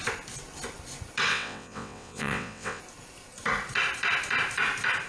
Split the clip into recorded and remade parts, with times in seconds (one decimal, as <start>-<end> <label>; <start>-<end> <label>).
0.0-1.3 recorded; 1.3-2.8 remade; 2.8-5.1 recorded

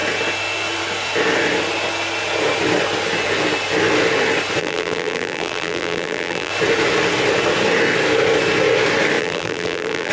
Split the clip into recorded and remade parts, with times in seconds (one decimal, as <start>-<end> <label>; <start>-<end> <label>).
0.0-4.6 recorded; 4.6-6.5 remade; 6.5-9.2 recorded; 9.2-10.1 remade

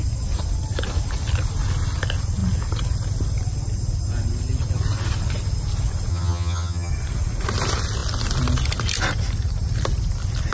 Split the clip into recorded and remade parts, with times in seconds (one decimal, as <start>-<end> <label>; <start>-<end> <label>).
0.0-6.1 recorded; 6.1-6.9 remade; 6.9-10.5 recorded

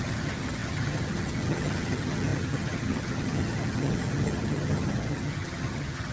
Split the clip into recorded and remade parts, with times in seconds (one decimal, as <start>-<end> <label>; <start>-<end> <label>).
0.0-6.1 remade

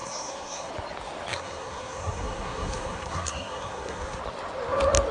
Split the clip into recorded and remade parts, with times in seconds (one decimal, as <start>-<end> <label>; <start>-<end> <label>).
0.0-0.7 remade; 0.7-1.3 recorded; 1.3-4.2 remade; 4.2-5.1 recorded

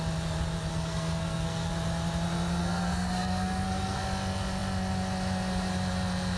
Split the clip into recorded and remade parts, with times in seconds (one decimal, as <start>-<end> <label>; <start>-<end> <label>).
0.0-0.7 recorded; 0.7-1.7 remade; 1.7-2.6 recorded; 2.6-4.0 remade; 4.0-6.4 recorded

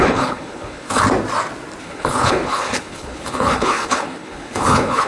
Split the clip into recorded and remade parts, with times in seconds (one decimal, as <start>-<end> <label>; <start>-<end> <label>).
0.0-1.0 remade; 1.0-1.8 recorded; 1.8-5.1 remade

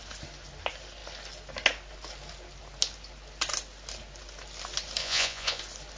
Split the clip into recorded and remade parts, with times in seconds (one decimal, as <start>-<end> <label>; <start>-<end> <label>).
0.0-5.0 recorded; 5.0-5.6 remade; 5.6-6.0 recorded